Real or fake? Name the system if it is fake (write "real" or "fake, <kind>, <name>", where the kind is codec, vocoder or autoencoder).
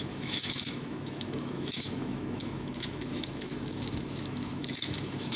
fake, autoencoder, DAC-VAE